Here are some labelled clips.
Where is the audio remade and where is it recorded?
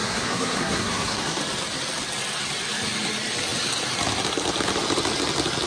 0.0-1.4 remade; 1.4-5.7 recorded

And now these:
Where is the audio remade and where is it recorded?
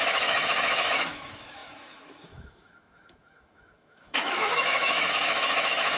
0.0-6.0 remade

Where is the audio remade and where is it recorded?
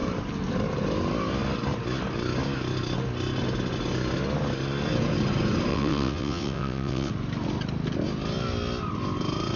0.0-5.7 recorded; 5.7-7.1 remade; 7.1-9.6 recorded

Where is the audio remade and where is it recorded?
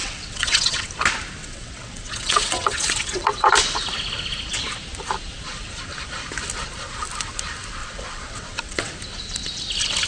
0.0-0.9 remade; 0.9-1.4 recorded; 1.4-3.5 remade; 3.5-7.8 recorded; 7.8-8.9 remade; 8.9-10.1 recorded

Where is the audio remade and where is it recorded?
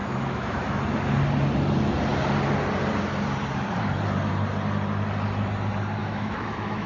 0.0-0.8 remade; 0.8-6.0 recorded; 6.0-6.9 remade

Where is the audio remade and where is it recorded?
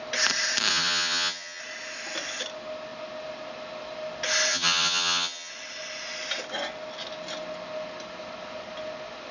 0.0-0.7 recorded; 0.7-1.6 remade; 1.6-4.5 recorded; 4.5-5.5 remade; 5.5-9.3 recorded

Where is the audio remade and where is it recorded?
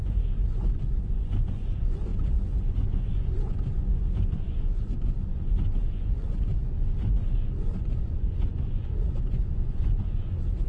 0.0-10.7 remade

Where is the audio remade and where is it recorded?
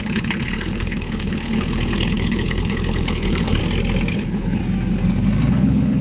0.0-3.6 remade; 3.6-4.1 recorded; 4.1-4.6 remade; 4.6-5.5 recorded; 5.5-6.0 remade